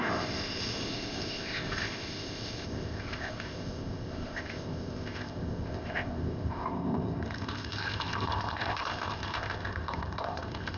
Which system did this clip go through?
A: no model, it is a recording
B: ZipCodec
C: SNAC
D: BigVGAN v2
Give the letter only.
B